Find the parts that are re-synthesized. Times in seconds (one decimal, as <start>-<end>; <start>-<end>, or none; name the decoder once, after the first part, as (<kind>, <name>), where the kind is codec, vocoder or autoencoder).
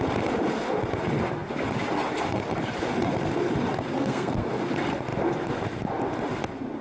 3.9-4.5 (codec, SNAC)